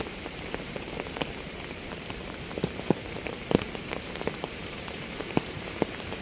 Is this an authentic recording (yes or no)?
no